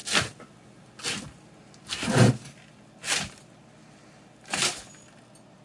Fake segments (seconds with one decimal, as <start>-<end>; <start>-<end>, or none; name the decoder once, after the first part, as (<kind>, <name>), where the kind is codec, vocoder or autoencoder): none

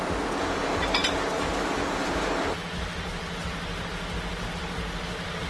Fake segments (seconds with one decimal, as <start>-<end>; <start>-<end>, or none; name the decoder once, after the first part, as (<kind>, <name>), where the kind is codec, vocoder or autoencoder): none

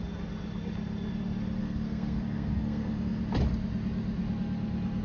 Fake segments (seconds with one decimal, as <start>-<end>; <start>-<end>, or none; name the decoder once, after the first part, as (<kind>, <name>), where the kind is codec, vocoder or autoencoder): 1.6-3.2 (codec, SNAC)

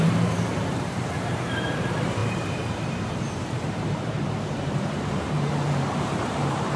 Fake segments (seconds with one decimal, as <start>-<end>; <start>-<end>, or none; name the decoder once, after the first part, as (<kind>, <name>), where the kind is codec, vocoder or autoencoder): 0.0-6.8 (vocoder, BigVGAN v2)

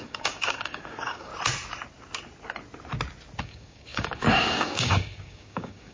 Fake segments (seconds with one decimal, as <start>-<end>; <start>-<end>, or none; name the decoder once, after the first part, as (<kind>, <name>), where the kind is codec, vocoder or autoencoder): 0.0-1.3 (codec, DAC); 3.4-5.9

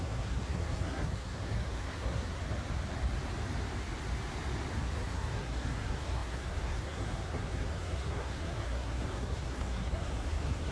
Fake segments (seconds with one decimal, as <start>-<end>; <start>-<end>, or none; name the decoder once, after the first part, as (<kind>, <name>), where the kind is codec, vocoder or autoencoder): 0.0-2.4 (codec, SNAC); 4.7-10.7